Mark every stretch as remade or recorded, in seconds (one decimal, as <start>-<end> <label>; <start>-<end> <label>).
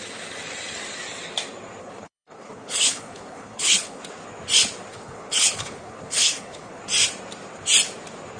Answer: 0.0-1.8 recorded; 1.8-4.0 remade; 4.0-4.9 recorded; 4.9-6.8 remade; 6.8-8.4 recorded